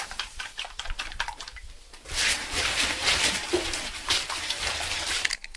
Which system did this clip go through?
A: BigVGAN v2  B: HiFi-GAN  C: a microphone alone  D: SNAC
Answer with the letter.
A